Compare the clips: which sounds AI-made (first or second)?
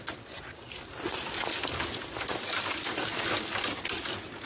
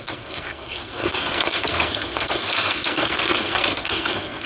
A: second